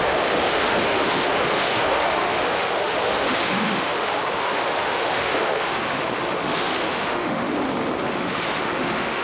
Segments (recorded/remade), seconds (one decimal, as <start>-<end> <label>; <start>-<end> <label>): 0.0-7.5 remade; 7.5-8.0 recorded; 8.0-9.2 remade